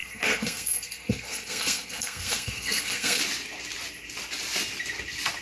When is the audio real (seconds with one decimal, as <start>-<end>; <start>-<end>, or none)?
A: 3.2-5.4